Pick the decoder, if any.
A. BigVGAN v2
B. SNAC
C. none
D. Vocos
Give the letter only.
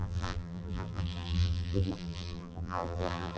A